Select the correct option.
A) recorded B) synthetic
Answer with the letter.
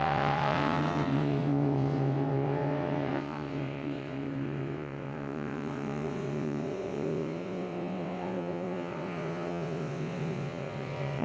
B